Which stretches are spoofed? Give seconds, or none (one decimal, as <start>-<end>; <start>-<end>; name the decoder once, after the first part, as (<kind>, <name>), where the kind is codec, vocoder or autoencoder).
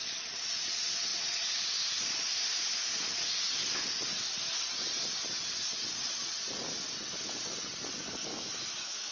8.3-9.1 (autoencoder, DAC-VAE)